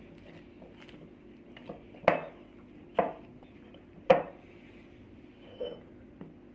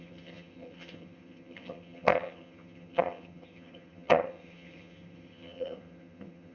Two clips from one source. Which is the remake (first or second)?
second